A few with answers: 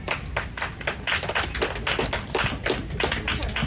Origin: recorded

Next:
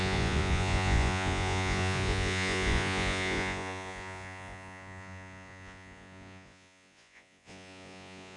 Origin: remade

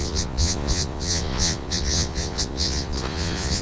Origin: remade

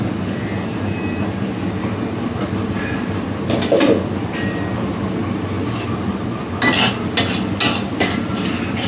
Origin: recorded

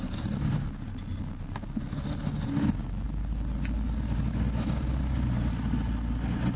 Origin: recorded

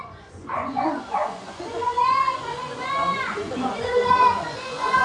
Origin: remade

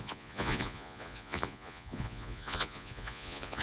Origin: remade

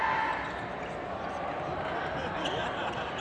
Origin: recorded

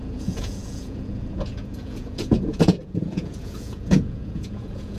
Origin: remade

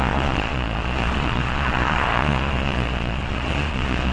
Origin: remade